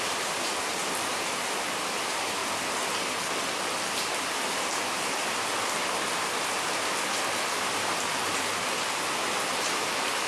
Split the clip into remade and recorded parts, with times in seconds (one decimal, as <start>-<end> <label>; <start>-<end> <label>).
0.0-2.4 remade; 2.4-3.9 recorded; 3.9-5.8 remade; 5.8-7.6 recorded; 7.6-10.3 remade